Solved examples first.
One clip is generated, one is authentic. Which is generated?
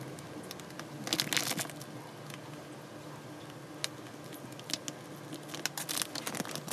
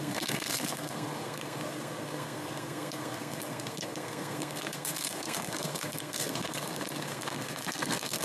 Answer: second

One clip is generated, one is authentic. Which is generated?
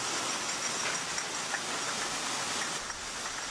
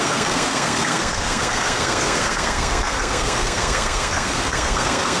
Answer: second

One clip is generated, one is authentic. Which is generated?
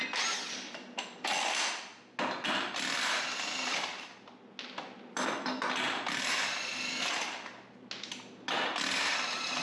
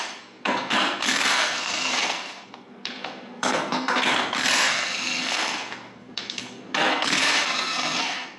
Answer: second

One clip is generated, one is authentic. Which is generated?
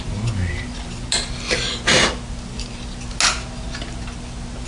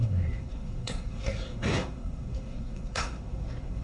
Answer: second